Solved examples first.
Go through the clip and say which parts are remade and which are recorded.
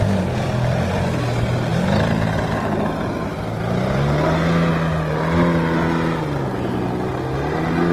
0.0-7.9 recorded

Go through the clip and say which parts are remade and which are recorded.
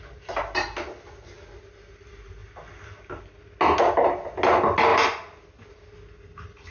0.0-6.7 recorded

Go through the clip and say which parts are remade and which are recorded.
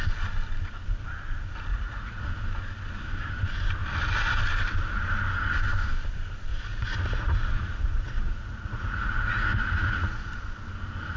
0.0-1.7 recorded; 1.7-2.2 remade; 2.2-6.5 recorded; 6.5-10.3 remade; 10.3-11.2 recorded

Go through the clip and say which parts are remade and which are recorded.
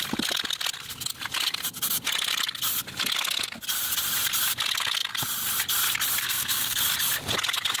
0.0-6.2 recorded; 6.2-6.8 remade; 6.8-7.8 recorded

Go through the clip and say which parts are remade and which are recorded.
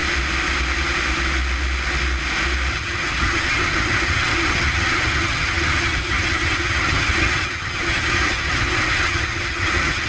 0.0-2.7 recorded; 2.7-10.1 remade